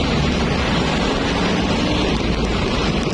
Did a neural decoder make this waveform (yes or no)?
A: no